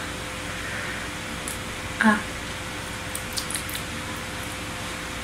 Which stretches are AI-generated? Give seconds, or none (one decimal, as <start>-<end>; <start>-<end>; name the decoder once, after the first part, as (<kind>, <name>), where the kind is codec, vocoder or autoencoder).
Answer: 3.3-3.9 (vocoder, BigVGAN v2)